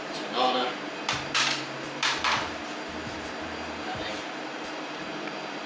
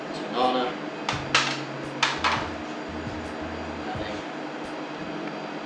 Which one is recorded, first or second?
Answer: second